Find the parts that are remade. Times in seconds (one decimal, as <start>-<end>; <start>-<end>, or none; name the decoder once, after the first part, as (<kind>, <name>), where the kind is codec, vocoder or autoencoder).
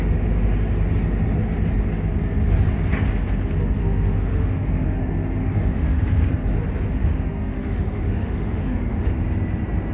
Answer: 3.8-5.0 (autoencoder, DAC-VAE); 5.4-6.3; 7.0-9.1